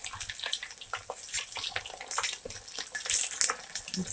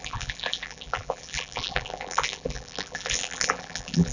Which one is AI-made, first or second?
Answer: second